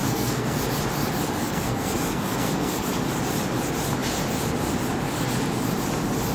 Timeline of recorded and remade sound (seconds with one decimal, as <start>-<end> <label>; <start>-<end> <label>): 0.0-0.6 remade; 0.6-1.4 recorded; 1.4-2.9 remade; 2.9-6.3 recorded